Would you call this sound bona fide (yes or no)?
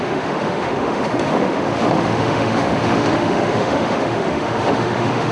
no